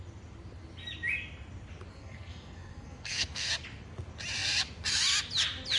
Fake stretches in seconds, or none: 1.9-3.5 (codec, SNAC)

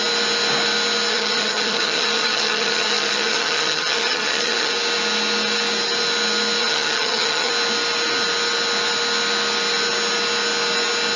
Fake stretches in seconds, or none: 1.1-4.7 (vocoder, HiFi-GAN); 6.6-7.5

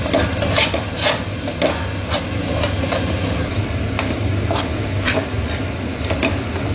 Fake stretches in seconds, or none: none

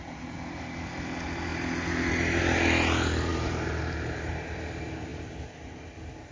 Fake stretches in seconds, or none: 3.3-4.3 (vocoder, BigVGAN v2)

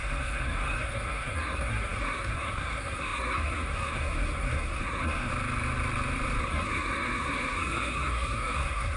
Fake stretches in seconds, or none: 0.0-5.3 (codec, SNAC); 6.4-9.0